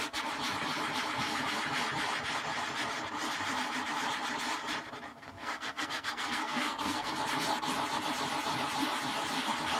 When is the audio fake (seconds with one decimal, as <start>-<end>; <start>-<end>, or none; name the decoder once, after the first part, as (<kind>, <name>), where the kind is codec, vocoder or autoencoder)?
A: 5.1-7.1 (codec, SNAC)

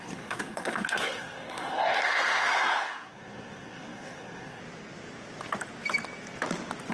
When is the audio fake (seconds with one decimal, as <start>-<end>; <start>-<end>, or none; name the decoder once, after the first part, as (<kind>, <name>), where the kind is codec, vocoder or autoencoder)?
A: 0.0-4.6 (codec, SNAC)

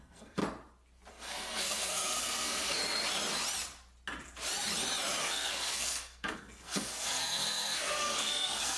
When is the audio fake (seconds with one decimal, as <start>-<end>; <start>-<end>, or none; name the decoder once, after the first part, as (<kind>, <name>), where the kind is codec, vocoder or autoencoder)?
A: 0.0-0.4 (codec, SNAC); 1.1-2.8; 5.2-8.8

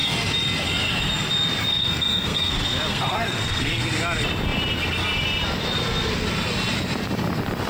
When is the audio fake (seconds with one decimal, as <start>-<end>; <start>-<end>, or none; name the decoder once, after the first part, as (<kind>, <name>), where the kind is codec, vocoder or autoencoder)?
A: 1.7-2.5 (codec, SNAC); 2.9-3.8